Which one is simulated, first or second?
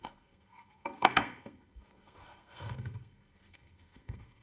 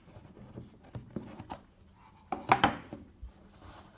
first